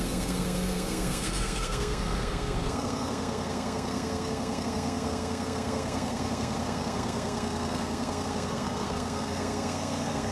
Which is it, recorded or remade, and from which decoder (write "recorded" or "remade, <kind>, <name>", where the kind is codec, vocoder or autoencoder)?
remade, codec, SNAC